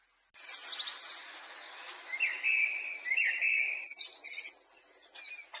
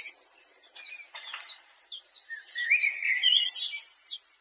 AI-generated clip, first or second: second